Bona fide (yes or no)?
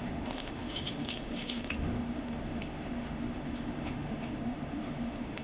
no